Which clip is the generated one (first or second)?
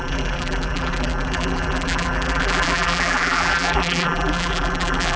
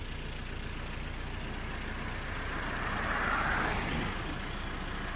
first